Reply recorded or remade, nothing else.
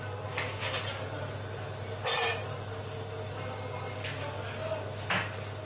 recorded